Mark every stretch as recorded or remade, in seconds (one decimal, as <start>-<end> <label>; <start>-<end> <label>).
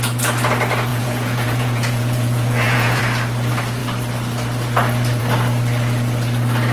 0.0-0.9 recorded; 0.9-3.0 remade; 3.0-6.7 recorded